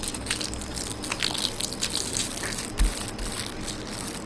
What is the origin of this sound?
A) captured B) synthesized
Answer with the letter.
A